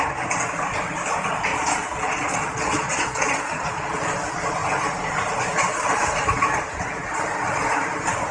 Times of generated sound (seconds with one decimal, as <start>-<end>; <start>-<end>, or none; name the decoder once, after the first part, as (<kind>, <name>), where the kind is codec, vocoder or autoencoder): 1.5-4.0 (vocoder, Vocos)